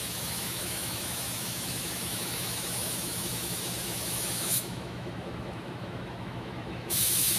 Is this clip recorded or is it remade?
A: remade